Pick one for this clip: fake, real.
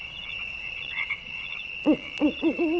fake